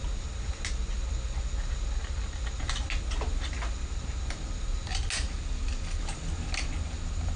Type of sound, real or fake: real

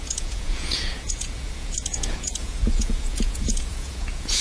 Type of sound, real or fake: fake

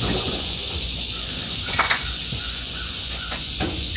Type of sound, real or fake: fake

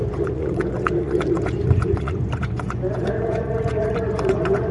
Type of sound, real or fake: fake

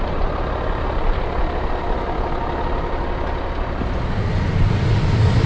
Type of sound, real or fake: real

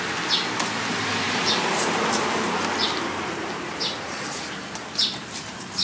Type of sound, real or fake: real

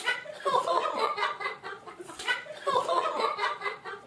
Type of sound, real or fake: fake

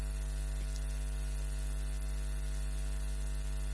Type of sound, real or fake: real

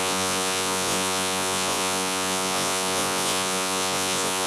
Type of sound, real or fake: fake